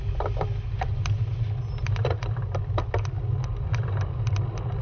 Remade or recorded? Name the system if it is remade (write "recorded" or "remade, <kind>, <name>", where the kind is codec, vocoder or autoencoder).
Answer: recorded